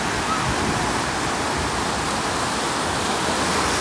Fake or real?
real